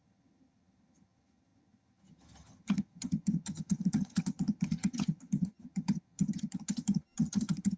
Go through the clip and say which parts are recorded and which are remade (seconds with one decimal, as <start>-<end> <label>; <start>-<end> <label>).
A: 0.0-7.8 remade